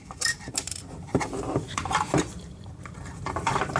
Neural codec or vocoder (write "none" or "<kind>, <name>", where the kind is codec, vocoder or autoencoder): vocoder, BigVGAN v2